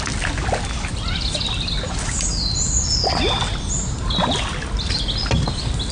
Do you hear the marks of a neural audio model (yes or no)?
no